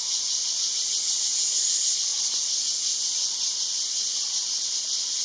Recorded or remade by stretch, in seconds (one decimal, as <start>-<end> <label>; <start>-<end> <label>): 0.0-5.2 recorded